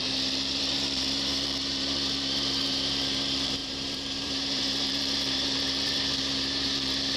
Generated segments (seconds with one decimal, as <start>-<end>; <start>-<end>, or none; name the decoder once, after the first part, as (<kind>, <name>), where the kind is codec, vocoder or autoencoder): 0.0-7.2 (vocoder, BigVGAN v2)